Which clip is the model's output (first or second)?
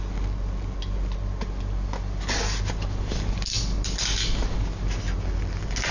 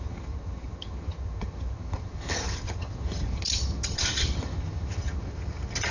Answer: second